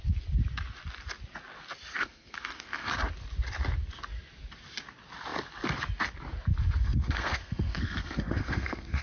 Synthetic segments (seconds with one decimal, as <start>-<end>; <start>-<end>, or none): 1.9-2.9; 6.8-9.0